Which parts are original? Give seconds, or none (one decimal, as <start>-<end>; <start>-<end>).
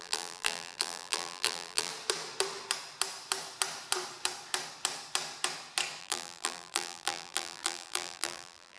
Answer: 1.9-6.0